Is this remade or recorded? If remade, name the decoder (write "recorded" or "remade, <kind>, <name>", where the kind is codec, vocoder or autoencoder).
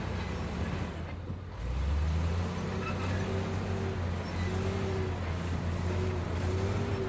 recorded